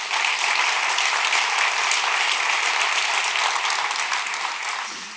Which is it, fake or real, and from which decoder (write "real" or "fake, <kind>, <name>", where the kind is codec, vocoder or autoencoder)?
real